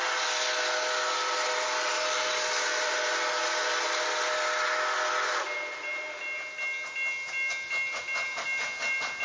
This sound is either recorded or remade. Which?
recorded